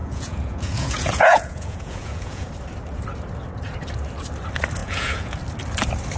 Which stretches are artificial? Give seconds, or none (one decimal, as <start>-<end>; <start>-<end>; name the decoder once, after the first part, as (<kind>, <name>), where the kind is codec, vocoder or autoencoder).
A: 0.0-2.5 (vocoder, Vocos); 4.8-5.4